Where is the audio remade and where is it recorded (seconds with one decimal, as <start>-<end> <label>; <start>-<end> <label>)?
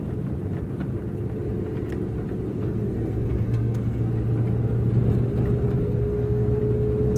0.0-2.5 recorded; 2.5-4.1 remade; 4.1-5.8 recorded; 5.8-6.6 remade; 6.6-7.2 recorded